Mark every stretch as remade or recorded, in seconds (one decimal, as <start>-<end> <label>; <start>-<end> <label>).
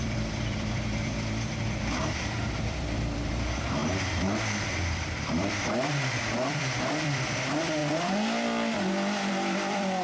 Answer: 0.0-7.8 remade; 7.8-9.3 recorded; 9.3-10.0 remade